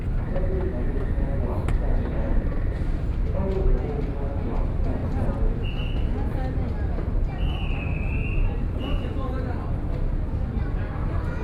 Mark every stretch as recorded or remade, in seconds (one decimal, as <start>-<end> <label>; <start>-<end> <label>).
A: 0.0-11.4 recorded